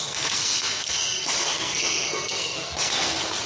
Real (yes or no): no